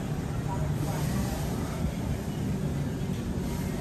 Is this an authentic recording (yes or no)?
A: yes